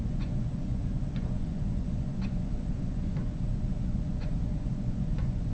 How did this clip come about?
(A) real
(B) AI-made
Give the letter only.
B